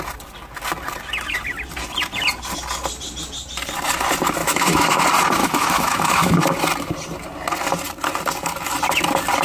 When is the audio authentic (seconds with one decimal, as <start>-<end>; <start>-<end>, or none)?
0.0-4.4; 5.0-5.4; 6.4-9.4